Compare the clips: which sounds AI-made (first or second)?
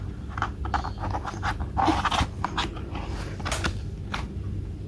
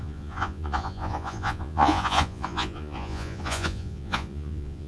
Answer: second